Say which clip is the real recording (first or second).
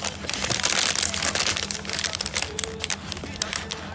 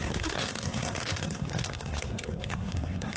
first